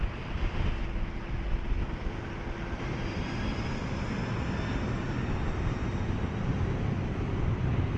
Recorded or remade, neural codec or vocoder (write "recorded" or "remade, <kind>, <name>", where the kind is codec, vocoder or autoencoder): recorded